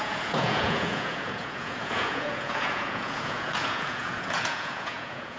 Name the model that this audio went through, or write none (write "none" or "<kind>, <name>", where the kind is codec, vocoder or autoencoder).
vocoder, Vocos